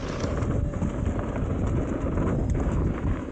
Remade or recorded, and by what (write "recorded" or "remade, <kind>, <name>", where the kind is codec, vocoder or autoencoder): recorded